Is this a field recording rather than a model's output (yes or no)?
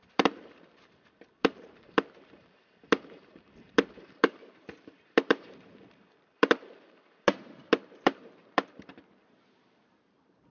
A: no